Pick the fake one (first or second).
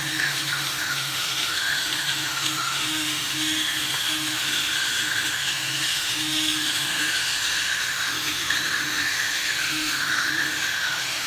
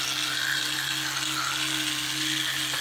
first